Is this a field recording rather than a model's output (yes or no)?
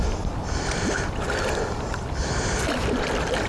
yes